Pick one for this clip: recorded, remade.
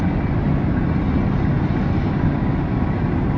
recorded